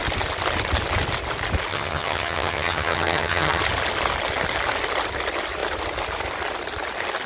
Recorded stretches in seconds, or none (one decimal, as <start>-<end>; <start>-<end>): 0.0-1.7; 3.6-7.3